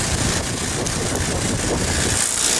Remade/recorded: recorded